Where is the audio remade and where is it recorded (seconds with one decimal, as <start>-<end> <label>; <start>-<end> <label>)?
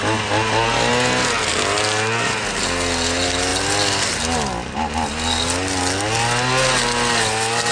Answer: 0.0-7.7 recorded